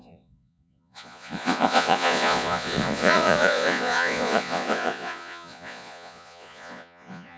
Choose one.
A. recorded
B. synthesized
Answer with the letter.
B